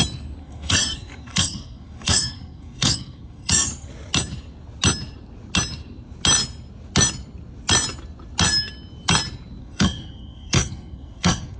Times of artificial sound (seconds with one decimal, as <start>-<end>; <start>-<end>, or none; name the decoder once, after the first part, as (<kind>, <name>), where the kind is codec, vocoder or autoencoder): 0.4-3.9 (codec, SNAC); 9.6-11.6